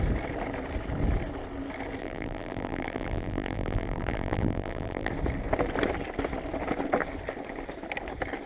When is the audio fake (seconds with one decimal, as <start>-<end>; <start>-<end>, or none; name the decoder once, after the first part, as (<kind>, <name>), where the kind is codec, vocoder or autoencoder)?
2.0-5.1 (vocoder, BigVGAN v2)